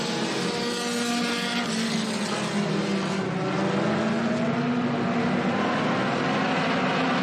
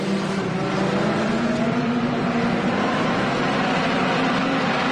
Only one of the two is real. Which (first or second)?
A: first